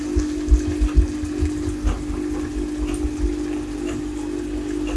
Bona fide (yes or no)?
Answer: yes